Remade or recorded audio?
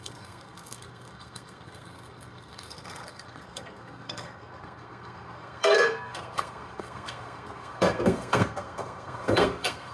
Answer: remade